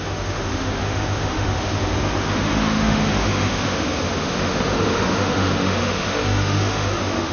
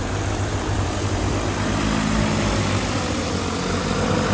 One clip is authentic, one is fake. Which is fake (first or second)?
first